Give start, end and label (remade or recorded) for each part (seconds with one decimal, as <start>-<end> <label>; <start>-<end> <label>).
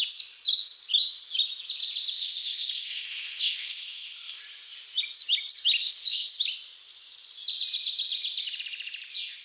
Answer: 0.0-2.1 recorded; 2.1-4.4 remade; 4.4-5.8 recorded; 5.8-6.4 remade; 6.4-9.4 recorded